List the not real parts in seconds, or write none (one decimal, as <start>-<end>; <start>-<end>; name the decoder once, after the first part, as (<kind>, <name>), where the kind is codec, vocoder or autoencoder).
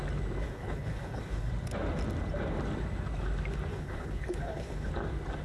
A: 0.4-1.5 (codec, HILCodec); 3.7-4.9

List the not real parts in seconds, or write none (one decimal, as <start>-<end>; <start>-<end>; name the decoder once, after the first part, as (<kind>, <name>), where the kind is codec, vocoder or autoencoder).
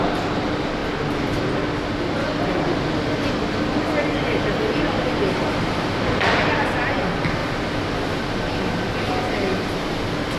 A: none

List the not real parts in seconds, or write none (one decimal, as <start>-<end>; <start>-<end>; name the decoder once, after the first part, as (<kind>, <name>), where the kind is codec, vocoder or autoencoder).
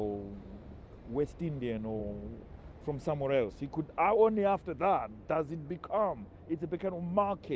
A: none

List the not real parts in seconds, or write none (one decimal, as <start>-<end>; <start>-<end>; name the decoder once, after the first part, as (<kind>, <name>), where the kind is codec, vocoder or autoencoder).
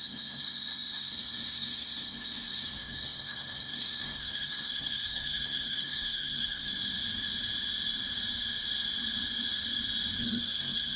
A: 0.0-6.7 (codec, SNAC); 10.2-11.0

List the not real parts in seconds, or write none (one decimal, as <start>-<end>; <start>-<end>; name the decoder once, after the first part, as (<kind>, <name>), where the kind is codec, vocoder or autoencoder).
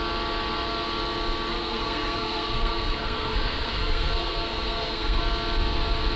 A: 1.5-5.2 (codec, SNAC)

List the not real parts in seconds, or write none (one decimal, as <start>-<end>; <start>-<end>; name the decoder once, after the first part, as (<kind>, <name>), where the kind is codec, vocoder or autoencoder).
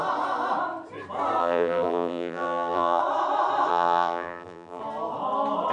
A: 1.4-3.0 (vocoder, BigVGAN v2); 3.7-4.8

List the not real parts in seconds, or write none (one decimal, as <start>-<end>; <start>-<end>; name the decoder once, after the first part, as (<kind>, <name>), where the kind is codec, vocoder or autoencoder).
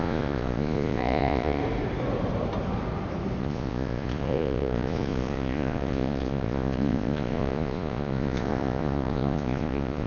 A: 0.0-1.6 (vocoder, Vocos); 3.4-10.1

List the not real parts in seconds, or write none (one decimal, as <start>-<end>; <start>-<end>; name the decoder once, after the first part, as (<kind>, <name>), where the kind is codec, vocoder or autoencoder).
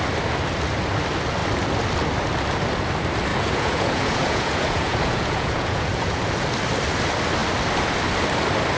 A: 3.3-6.2 (vocoder, Vocos)